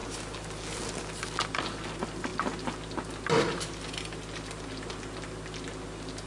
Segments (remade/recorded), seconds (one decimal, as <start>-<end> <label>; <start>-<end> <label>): 0.0-6.3 recorded